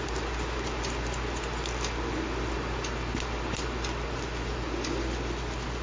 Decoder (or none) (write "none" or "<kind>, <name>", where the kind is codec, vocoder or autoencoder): none